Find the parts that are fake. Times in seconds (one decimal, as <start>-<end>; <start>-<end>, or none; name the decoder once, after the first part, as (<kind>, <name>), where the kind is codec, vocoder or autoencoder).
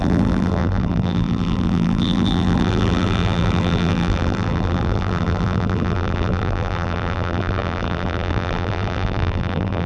0.0-9.9 (vocoder, BigVGAN v2)